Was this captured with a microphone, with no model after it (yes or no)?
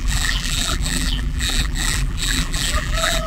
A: no